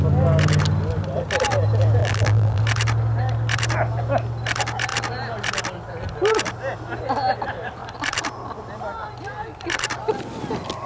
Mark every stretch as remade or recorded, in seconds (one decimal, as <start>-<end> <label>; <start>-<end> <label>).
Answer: 0.0-2.0 recorded; 2.0-2.6 remade; 2.6-10.9 recorded